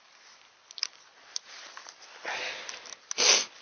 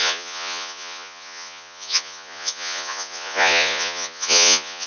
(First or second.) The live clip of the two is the first